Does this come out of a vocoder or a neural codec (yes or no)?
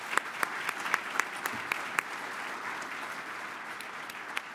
no